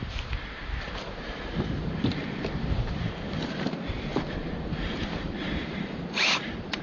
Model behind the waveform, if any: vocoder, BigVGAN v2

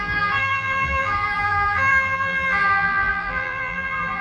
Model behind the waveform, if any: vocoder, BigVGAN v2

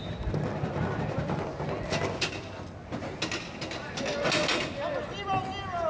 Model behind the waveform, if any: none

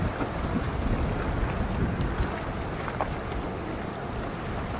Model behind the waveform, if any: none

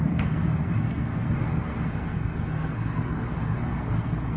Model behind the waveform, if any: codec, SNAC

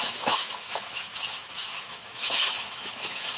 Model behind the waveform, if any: autoencoder, DAC-VAE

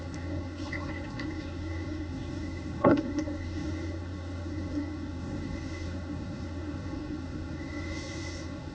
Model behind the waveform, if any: codec, SNAC